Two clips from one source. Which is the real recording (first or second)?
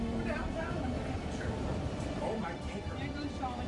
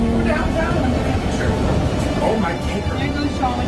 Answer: second